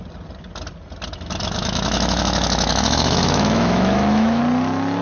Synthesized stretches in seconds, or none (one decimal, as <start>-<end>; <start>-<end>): 1.4-4.4